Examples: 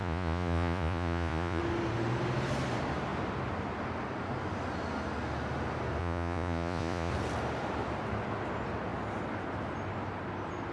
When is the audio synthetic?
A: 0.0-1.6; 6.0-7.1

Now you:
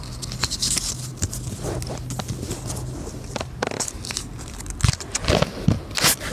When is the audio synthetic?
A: none

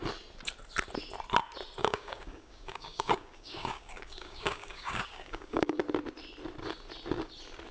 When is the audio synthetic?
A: 1.8-5.8

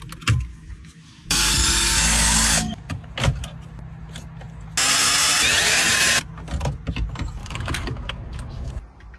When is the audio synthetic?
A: 0.5-3.1; 7.4-8.7

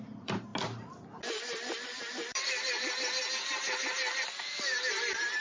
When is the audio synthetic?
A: 0.0-0.5; 2.0-3.2; 4.4-5.4

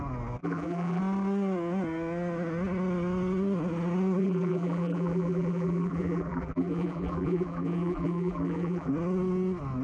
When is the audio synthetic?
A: 0.4-1.0; 4.2-8.9